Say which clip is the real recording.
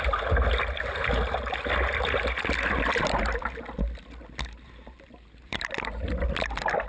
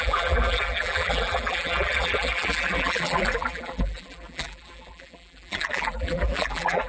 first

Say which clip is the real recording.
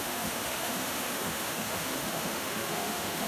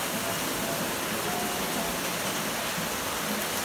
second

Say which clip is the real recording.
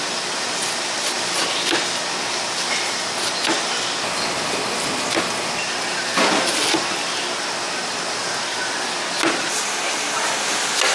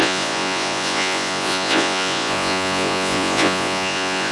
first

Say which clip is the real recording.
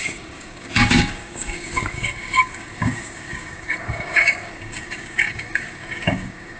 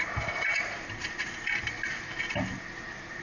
second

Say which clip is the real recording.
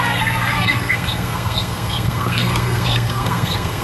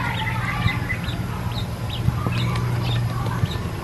second